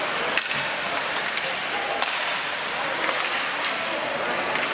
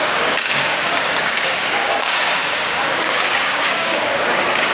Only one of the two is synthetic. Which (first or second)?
second